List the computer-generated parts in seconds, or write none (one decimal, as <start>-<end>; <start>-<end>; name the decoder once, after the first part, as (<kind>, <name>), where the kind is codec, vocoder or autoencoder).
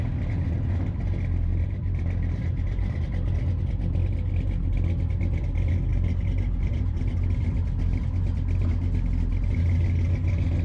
1.5-3.1 (vocoder, BigVGAN v2); 5.9-7.1